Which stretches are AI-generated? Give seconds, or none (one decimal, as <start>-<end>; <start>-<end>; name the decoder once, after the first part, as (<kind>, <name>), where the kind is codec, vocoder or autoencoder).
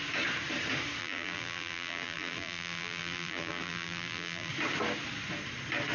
1.0-4.5 (vocoder, BigVGAN v2)